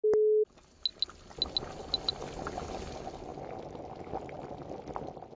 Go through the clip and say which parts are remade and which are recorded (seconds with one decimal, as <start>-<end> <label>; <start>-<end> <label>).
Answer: 0.0-5.4 recorded